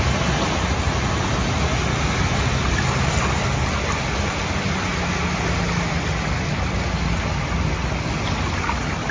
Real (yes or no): yes